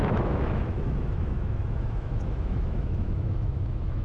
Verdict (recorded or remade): remade